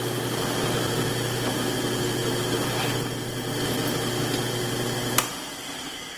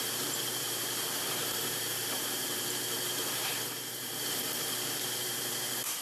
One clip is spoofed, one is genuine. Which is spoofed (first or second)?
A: second